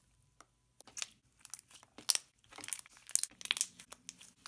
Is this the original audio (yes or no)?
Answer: yes